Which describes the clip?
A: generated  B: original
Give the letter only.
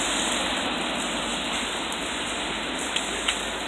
B